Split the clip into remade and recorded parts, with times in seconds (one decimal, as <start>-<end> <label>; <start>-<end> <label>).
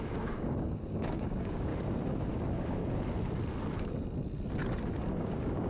0.0-1.7 remade; 1.7-2.3 recorded; 2.3-2.8 remade; 2.8-5.2 recorded; 5.2-5.7 remade